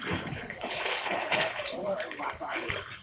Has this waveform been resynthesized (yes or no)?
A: yes